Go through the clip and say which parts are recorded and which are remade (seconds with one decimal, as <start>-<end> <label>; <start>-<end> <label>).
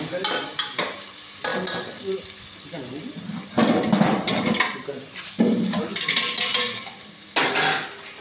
0.0-1.5 recorded; 1.5-5.4 remade; 5.4-5.9 recorded; 5.9-7.1 remade; 7.1-8.2 recorded